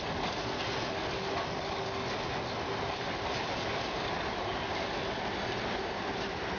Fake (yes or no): no